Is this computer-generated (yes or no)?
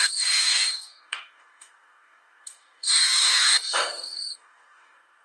yes